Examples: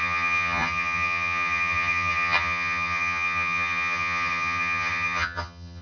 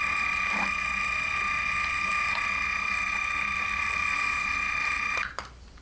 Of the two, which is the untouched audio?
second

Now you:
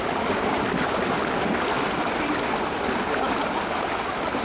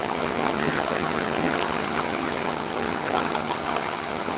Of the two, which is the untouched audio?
first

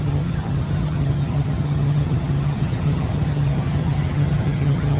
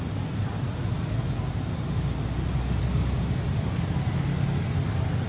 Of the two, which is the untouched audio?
second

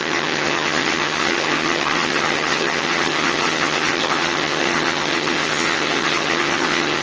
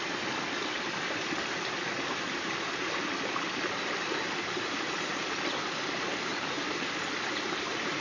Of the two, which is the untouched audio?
second